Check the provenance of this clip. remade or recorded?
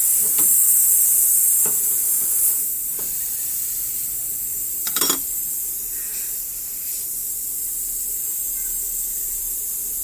remade